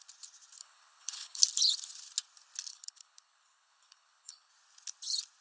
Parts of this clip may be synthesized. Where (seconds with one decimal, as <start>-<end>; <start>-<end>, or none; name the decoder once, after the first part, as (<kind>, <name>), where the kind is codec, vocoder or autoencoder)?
0.6-1.4 (codec, HILCodec); 2.7-4.5